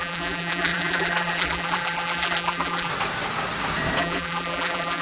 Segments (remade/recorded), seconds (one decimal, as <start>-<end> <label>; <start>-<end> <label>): 0.0-2.9 remade; 2.9-4.0 recorded; 4.0-5.0 remade